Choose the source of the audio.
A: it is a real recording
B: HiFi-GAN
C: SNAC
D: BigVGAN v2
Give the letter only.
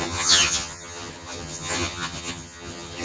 B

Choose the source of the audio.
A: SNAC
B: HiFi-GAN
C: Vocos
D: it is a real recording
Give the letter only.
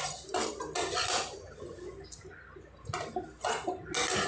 D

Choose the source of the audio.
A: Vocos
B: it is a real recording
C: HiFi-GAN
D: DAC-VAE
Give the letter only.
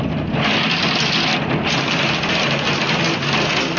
B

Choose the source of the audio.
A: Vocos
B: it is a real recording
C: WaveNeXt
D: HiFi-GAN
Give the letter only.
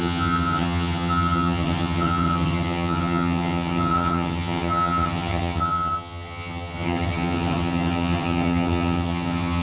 D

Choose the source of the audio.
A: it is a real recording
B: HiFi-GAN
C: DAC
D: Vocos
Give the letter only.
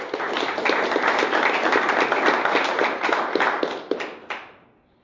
A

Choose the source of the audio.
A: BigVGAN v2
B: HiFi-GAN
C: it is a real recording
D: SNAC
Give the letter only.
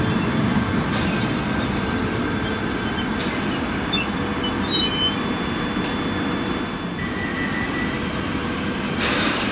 C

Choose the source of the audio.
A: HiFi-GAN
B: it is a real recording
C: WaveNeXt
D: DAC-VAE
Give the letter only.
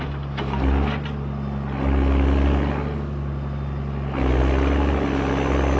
B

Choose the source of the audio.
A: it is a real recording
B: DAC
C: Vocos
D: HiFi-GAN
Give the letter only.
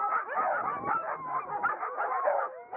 A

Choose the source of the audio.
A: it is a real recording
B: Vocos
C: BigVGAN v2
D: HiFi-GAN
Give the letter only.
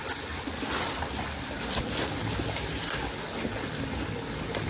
A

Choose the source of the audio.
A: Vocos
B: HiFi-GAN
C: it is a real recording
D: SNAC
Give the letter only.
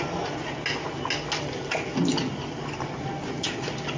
C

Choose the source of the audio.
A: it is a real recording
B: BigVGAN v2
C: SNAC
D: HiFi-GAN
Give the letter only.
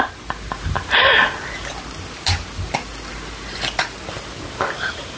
A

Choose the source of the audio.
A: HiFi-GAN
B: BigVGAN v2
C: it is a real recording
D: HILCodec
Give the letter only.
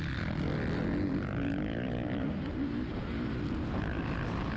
C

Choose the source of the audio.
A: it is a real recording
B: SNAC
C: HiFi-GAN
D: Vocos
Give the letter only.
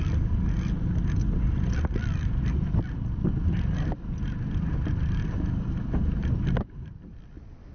A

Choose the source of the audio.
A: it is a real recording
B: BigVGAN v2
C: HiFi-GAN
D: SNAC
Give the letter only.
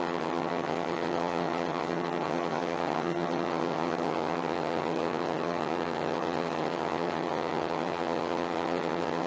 C